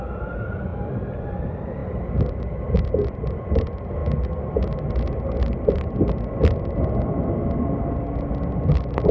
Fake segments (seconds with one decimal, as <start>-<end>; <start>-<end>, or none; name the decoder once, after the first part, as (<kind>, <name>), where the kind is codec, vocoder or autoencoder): none